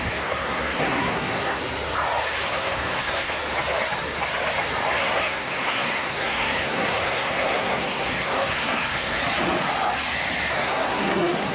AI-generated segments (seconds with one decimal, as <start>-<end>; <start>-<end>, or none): 0.0-1.6; 2.5-3.4; 5.0-9.2; 10.5-11.5